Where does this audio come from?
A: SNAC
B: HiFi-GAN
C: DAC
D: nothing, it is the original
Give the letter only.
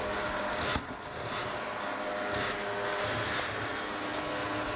D